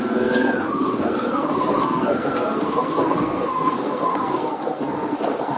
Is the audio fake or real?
fake